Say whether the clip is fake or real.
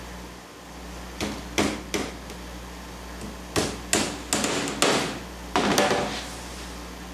real